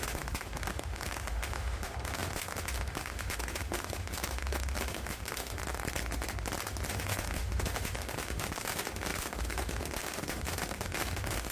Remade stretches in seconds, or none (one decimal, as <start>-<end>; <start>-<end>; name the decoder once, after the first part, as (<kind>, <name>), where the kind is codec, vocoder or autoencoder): 0.0-5.6 (autoencoder, DAC-VAE); 6.9-11.5